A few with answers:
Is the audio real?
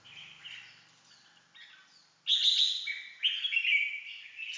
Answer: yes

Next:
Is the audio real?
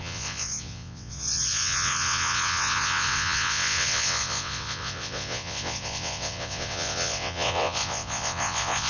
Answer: no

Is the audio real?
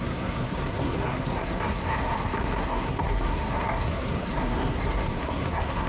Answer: no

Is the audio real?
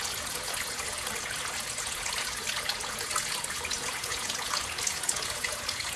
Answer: no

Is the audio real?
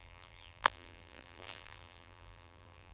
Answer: no